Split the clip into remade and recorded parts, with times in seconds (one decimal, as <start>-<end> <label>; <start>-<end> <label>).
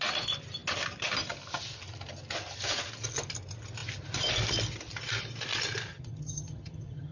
0.0-5.9 recorded; 5.9-7.1 remade